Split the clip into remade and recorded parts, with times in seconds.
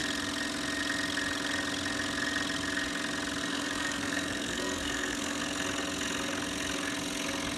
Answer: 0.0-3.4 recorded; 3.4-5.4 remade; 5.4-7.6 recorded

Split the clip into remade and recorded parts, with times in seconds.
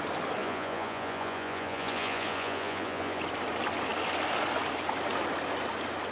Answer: 0.0-0.4 recorded; 0.4-3.2 remade; 3.2-6.1 recorded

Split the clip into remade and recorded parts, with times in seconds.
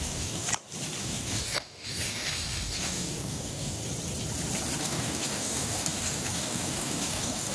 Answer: 0.0-0.5 remade; 0.5-1.0 recorded; 1.0-3.8 remade; 3.8-4.8 recorded; 4.8-7.5 remade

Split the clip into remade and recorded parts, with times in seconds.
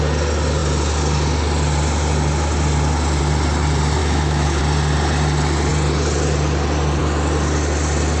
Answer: 0.0-4.0 recorded; 4.0-4.6 remade; 4.6-8.2 recorded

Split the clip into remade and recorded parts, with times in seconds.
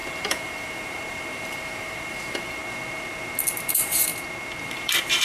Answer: 0.0-2.6 remade; 2.6-3.5 recorded; 3.5-4.1 remade; 4.1-4.6 recorded; 4.6-5.2 remade